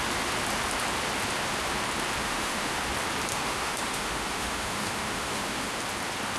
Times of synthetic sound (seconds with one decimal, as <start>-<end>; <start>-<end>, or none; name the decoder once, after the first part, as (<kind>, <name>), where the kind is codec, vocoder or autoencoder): 2.2-2.8 (autoencoder, DAC-VAE); 3.3-5.8